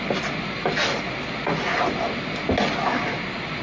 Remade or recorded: recorded